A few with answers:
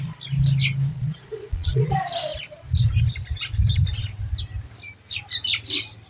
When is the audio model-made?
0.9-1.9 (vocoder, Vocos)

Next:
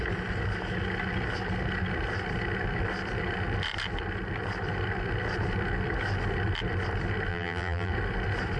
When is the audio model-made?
7.3-7.9 (vocoder, BigVGAN v2)

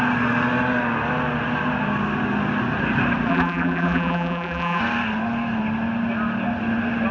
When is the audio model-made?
3.3-4.8 (vocoder, BigVGAN v2)